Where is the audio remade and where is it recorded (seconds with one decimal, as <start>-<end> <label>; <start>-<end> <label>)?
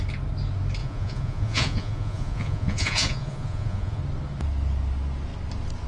0.0-0.8 recorded; 0.8-4.0 remade; 4.0-5.9 recorded